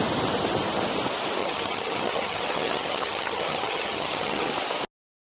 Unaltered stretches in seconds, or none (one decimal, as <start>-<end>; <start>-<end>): 0.0-1.4; 4.5-5.4